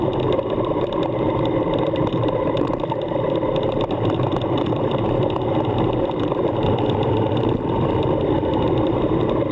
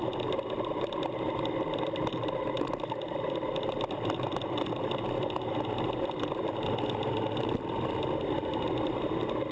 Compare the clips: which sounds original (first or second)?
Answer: second